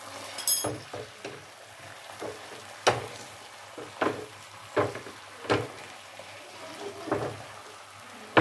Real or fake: real